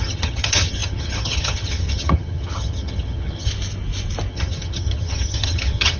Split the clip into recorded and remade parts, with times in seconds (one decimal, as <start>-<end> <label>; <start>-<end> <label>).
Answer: 0.0-3.5 remade; 3.5-4.3 recorded; 4.3-6.0 remade